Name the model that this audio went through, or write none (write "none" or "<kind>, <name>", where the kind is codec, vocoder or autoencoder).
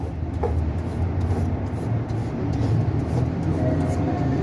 none